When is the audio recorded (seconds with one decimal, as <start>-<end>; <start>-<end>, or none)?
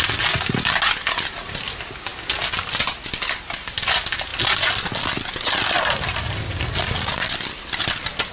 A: 0.0-8.3